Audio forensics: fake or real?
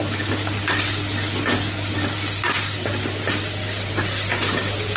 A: real